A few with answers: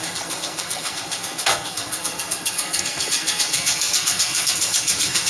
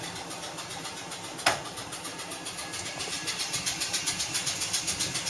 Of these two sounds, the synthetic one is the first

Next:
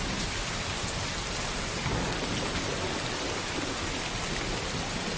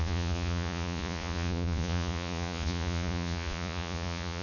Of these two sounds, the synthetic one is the second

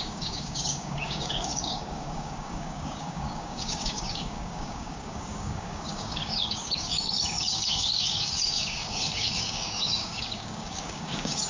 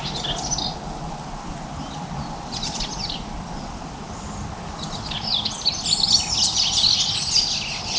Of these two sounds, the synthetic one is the first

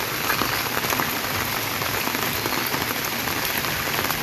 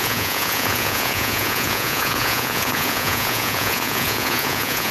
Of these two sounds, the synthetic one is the second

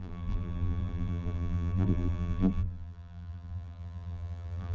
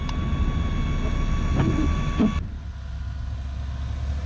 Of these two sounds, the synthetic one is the first